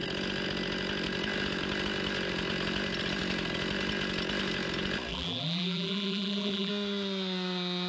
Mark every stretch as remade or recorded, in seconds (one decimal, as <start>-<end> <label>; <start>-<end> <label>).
0.0-5.1 recorded; 5.1-6.7 remade; 6.7-7.9 recorded